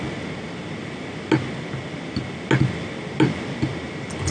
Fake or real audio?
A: real